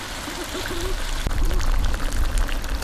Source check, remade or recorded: recorded